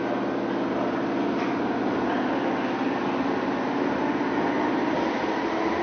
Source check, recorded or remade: recorded